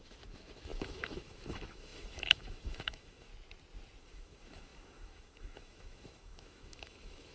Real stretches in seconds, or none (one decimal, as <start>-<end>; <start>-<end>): 3.3-4.0